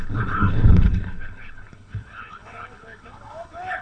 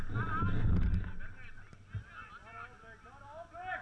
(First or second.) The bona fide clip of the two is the second